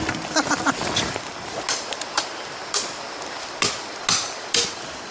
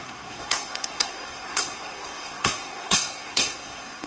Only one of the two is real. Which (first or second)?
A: first